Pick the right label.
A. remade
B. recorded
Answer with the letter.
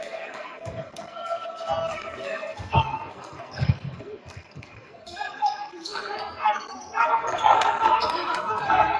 A